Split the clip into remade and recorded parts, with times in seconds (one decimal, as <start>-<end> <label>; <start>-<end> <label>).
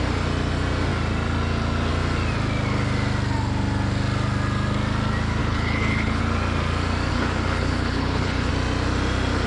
0.0-5.4 recorded; 5.4-6.2 remade; 6.2-7.1 recorded; 7.1-8.5 remade; 8.5-9.5 recorded